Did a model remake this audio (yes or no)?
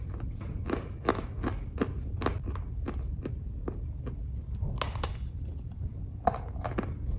no